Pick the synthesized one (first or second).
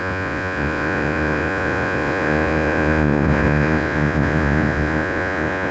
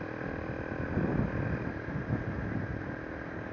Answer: first